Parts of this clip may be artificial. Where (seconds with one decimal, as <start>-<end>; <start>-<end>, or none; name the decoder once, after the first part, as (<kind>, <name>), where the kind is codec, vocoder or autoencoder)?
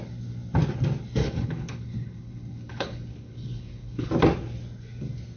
1.2-4.1 (codec, HILCodec)